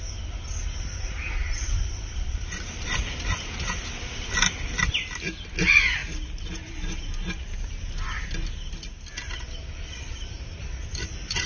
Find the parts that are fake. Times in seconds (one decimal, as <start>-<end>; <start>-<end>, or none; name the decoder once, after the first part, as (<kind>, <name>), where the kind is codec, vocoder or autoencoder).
none